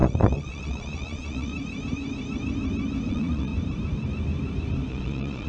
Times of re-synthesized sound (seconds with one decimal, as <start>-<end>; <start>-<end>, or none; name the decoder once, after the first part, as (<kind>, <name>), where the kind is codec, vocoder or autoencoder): 0.0-1.5 (vocoder, Vocos); 3.1-3.5; 4.9-5.5